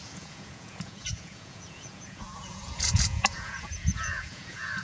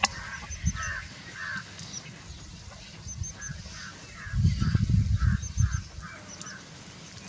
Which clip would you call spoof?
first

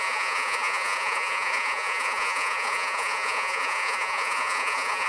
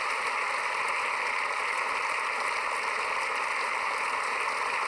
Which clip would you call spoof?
first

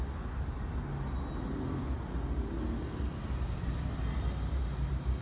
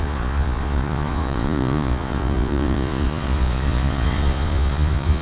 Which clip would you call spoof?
second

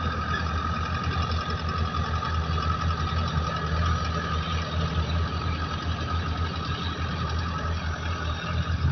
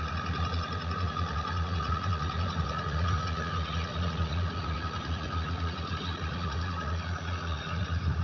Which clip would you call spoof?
second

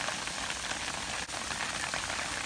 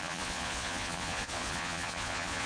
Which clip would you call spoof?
second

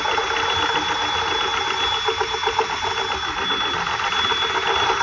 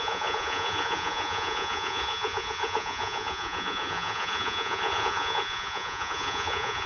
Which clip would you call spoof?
second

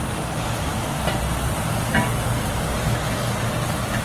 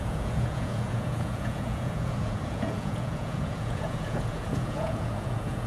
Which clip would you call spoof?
second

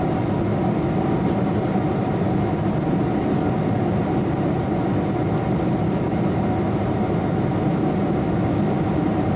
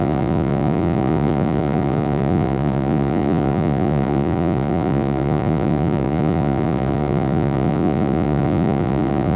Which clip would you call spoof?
second